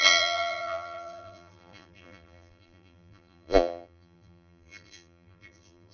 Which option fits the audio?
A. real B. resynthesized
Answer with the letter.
B